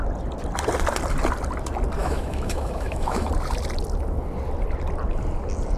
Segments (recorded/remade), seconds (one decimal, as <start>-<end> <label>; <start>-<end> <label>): 0.0-2.0 recorded; 2.0-3.3 remade; 3.3-5.8 recorded